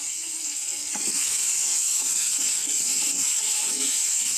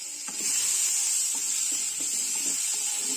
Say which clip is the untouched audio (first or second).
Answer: second